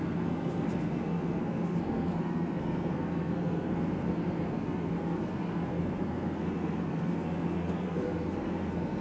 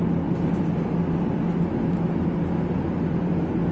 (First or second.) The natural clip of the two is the second